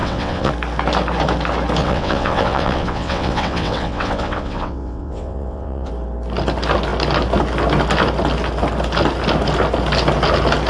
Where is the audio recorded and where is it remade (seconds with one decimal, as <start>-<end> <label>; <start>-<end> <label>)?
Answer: 0.0-0.5 remade; 0.5-1.8 recorded; 1.8-5.9 remade; 5.9-10.7 recorded